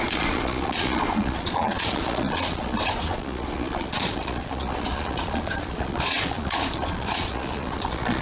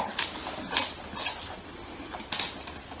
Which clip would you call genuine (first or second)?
second